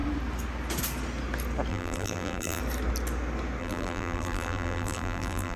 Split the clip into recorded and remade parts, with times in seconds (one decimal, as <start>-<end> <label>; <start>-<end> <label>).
0.0-1.7 recorded; 1.7-2.6 remade; 2.6-3.6 recorded; 3.6-5.6 remade